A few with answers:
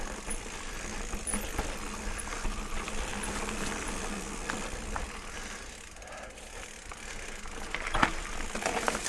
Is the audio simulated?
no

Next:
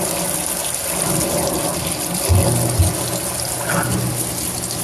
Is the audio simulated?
no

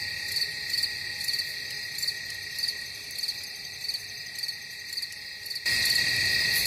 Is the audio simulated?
no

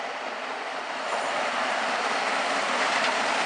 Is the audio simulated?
no